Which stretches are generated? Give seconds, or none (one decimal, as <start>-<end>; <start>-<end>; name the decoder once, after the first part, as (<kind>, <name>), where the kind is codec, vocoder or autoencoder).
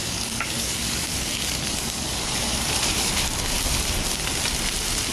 0.0-3.1 (codec, DAC)